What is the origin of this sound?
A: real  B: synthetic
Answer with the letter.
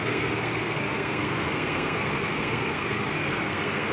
B